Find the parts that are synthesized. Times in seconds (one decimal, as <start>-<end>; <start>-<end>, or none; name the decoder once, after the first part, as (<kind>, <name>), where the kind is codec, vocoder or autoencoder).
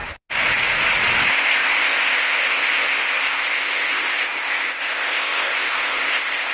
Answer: 1.3-6.5 (codec, ZipCodec)